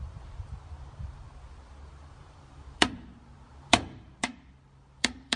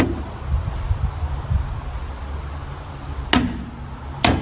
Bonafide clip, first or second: second